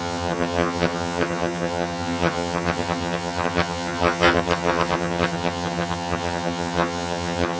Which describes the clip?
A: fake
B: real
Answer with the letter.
A